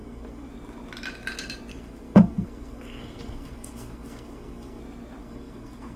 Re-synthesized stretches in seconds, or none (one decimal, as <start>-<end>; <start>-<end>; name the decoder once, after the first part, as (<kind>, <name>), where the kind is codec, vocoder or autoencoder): 0.0-0.5 (codec, SNAC); 1.7-4.8; 5.2-6.0